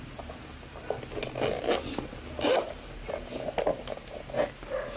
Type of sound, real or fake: real